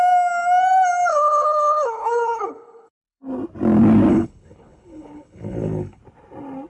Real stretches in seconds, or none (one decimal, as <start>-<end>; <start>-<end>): 0.0-1.1; 2.9-4.1; 6.0-6.7